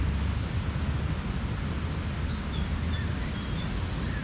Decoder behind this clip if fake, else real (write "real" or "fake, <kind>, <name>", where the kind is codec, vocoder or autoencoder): real